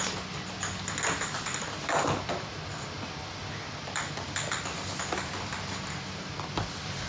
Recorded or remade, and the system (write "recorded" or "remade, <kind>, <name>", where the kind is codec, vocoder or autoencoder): recorded